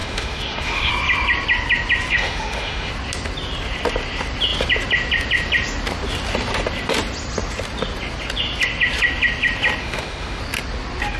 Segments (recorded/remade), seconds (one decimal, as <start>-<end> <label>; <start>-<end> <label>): 0.0-0.9 remade; 0.9-2.1 recorded; 2.1-2.9 remade; 2.9-9.8 recorded; 9.8-10.4 remade; 10.4-11.2 recorded

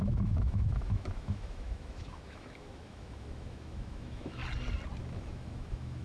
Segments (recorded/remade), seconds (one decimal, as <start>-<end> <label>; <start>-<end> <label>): 0.0-4.4 remade; 4.4-5.0 recorded; 5.0-6.0 remade

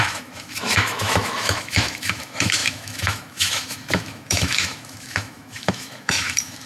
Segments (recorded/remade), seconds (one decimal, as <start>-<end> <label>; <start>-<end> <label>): 0.0-6.7 remade

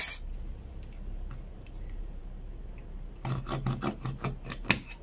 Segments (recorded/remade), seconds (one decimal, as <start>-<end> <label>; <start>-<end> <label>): 0.0-5.0 recorded

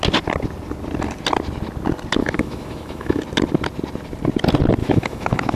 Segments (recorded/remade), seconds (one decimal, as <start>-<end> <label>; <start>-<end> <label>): 0.0-2.2 recorded; 2.2-3.2 remade; 3.2-4.8 recorded; 4.8-5.6 remade

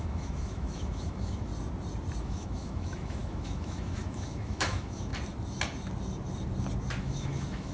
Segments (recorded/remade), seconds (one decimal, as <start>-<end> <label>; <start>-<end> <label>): 0.0-1.5 remade; 1.5-2.2 recorded; 2.2-5.1 remade; 5.1-7.0 recorded; 7.0-7.7 remade

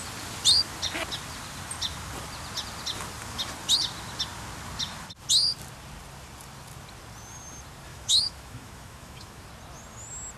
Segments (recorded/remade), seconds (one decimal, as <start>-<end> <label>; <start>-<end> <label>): 0.0-7.9 recorded; 7.9-9.5 remade; 9.5-10.4 recorded